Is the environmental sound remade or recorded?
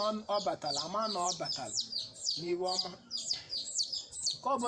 remade